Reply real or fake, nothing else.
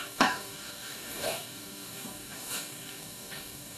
fake